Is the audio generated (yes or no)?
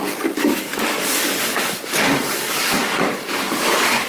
yes